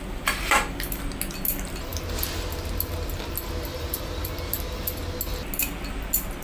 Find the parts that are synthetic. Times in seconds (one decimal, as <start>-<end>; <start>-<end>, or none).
3.7-4.3